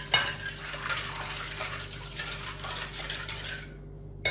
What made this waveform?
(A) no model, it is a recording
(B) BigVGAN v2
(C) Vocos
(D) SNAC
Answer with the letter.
A